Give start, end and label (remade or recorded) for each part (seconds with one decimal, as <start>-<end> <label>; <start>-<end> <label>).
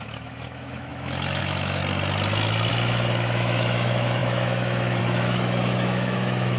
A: 0.0-1.8 remade; 1.8-2.7 recorded; 2.7-6.6 remade